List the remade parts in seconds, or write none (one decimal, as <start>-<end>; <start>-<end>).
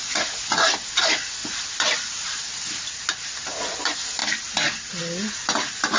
0.0-0.7